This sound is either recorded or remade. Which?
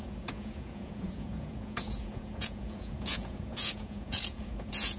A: remade